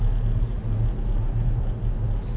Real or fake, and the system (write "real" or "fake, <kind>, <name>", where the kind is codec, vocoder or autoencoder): real